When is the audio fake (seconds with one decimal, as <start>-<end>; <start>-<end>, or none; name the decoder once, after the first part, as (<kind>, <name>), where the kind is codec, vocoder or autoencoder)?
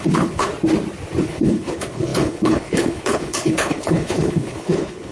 0.0-0.5 (codec, HILCodec); 1.2-5.1